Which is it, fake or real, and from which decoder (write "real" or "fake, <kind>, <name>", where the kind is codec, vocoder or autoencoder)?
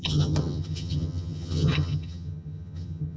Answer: fake, vocoder, HiFi-GAN